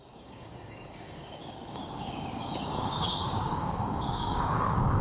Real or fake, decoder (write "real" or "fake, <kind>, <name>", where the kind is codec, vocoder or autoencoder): fake, codec, DAC